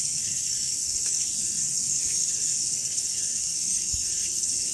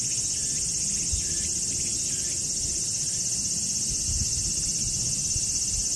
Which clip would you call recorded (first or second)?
second